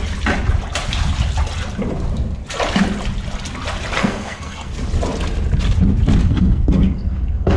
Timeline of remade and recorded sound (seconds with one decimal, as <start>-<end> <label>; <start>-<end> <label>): 0.0-4.0 recorded; 4.0-4.8 remade; 4.8-6.2 recorded; 6.2-7.6 remade